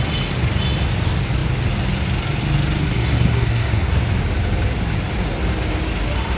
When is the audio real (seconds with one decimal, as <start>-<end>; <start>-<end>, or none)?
0.0-2.8; 4.0-6.4